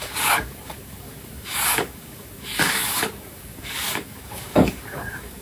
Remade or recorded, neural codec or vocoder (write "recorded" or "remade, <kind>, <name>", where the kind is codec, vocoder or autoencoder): remade, codec, DAC